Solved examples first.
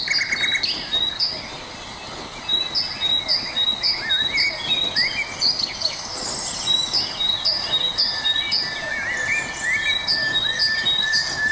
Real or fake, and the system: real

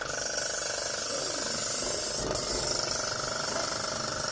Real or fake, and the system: real